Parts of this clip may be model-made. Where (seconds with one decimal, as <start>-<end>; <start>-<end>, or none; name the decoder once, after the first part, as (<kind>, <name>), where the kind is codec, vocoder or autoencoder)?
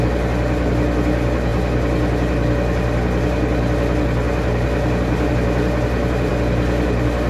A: none